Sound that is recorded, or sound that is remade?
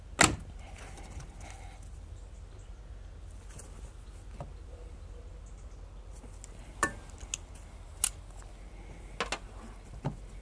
recorded